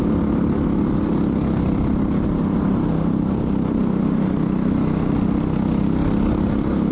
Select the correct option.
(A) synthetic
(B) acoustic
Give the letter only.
B